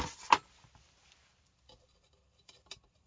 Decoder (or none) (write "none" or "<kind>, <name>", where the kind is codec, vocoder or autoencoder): none